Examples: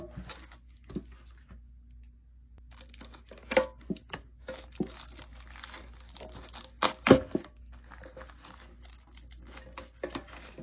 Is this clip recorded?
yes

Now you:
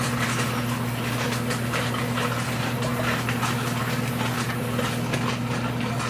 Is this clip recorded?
yes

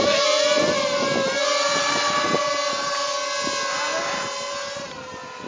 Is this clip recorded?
yes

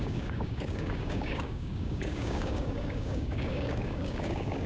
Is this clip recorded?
no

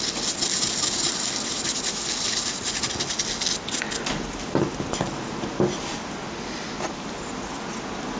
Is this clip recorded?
yes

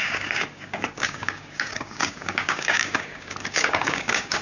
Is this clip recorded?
no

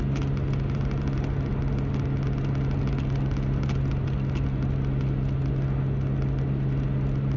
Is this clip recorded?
yes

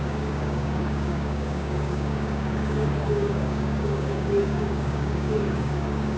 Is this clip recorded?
no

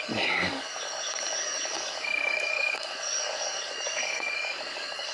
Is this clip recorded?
no